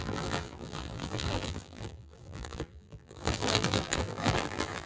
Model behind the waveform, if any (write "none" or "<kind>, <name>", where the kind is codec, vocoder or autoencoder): vocoder, BigVGAN v2